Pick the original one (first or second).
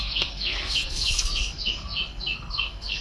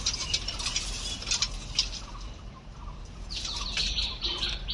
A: second